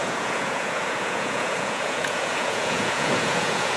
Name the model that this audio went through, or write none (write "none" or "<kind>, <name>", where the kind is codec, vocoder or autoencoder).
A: vocoder, Vocos